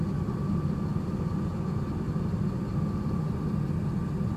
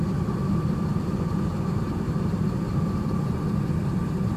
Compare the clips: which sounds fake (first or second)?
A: second